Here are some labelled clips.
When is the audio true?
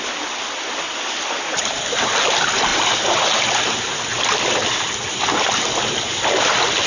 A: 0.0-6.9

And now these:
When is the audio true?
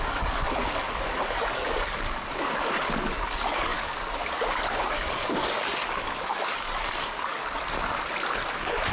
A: 7.4-8.5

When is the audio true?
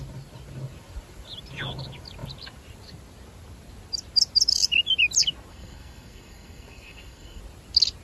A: 0.0-5.5; 7.4-8.0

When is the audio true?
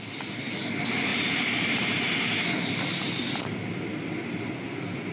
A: 0.0-1.1; 2.2-5.1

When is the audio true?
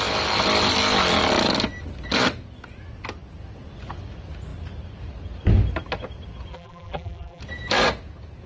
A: 0.0-6.5; 7.4-8.5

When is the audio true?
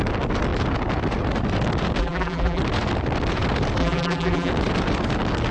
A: 0.0-2.0; 2.6-3.8; 4.5-5.5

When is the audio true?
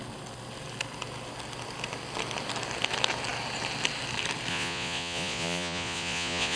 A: 0.0-4.5